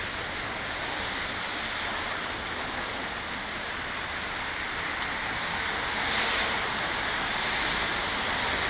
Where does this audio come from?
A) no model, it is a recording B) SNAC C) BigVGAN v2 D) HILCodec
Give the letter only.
A